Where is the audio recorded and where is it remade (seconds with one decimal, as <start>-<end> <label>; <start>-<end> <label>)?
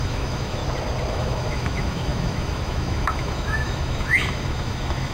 0.0-0.6 remade; 0.6-1.1 recorded; 1.1-5.1 remade